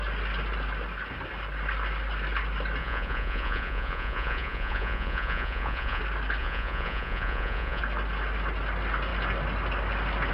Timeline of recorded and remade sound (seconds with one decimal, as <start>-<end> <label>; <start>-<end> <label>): 0.0-2.8 recorded; 2.8-6.0 remade; 6.0-6.4 recorded; 6.4-7.8 remade; 7.8-10.3 recorded